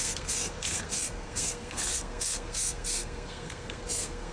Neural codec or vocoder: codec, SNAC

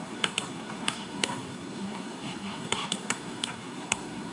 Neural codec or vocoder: codec, SNAC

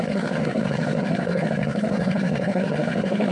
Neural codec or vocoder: codec, SNAC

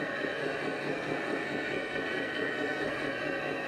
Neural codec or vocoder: codec, SNAC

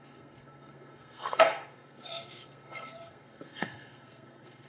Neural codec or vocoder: codec, SNAC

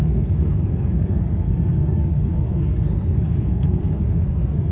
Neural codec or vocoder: codec, SNAC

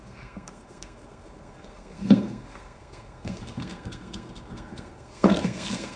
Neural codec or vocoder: codec, SNAC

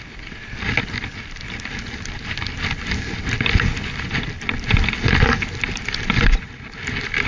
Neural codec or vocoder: none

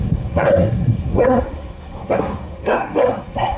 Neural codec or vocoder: codec, SNAC